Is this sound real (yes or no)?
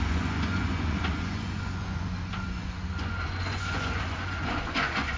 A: no